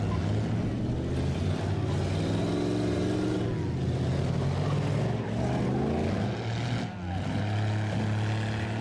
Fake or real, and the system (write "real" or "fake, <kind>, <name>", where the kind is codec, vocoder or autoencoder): real